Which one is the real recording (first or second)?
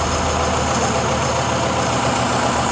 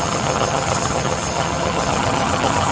first